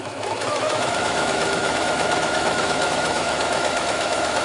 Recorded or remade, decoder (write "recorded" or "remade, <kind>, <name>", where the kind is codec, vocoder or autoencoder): remade, autoencoder, DAC-VAE